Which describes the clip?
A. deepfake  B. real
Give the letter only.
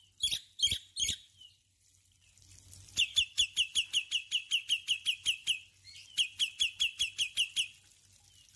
B